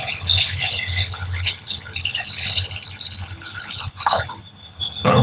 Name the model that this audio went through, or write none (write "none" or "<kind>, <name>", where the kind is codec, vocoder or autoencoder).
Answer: codec, HILCodec